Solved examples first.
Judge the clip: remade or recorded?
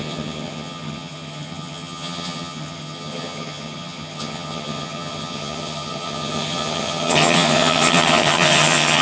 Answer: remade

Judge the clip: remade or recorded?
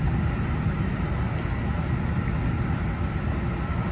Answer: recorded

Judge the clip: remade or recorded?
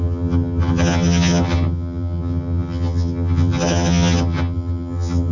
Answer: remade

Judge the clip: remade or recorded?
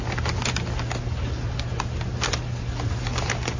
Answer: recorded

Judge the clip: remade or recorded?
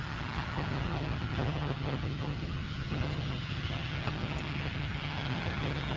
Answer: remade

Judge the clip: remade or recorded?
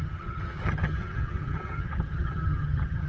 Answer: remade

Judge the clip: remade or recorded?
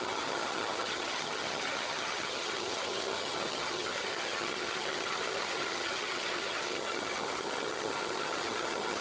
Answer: remade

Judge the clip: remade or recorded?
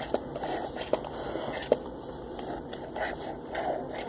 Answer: recorded